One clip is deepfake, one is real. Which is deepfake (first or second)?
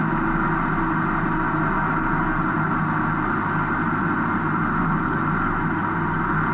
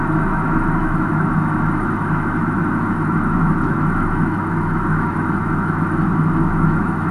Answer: second